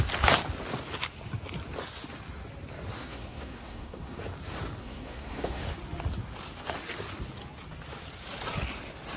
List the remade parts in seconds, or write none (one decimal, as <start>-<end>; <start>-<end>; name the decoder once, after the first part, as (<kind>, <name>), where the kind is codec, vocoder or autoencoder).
3.0-4.2 (codec, SNAC); 4.8-5.6